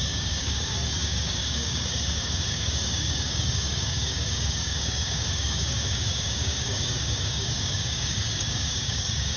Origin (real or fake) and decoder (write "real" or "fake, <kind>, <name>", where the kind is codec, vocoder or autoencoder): fake, codec, DAC